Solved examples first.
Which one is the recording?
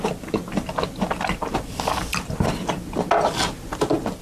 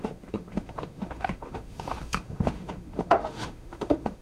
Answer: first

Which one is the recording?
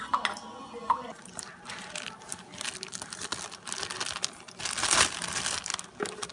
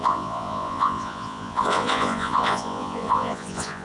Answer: first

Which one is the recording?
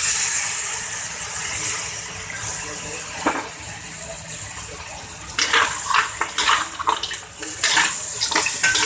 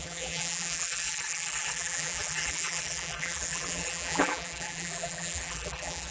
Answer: first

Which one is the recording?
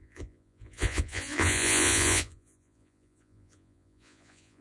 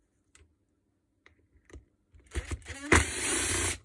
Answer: second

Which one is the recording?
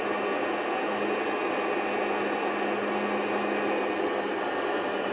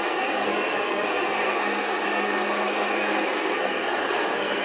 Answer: first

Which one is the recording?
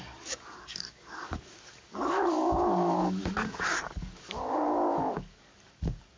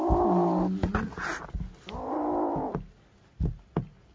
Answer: second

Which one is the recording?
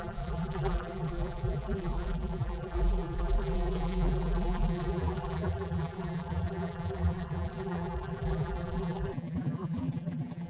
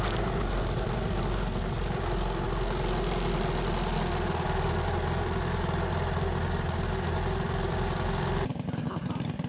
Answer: second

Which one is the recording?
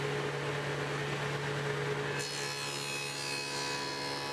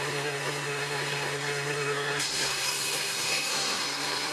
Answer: first